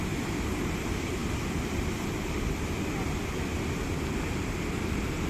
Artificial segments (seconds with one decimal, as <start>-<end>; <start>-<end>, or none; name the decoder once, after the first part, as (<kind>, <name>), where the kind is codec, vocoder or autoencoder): 0.0-1.2 (vocoder, BigVGAN v2); 4.4-5.3